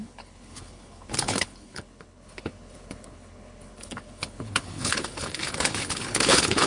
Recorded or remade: remade